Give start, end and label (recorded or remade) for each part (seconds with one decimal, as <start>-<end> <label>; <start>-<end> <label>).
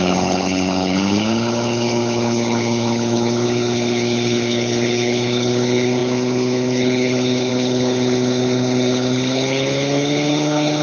0.0-10.8 remade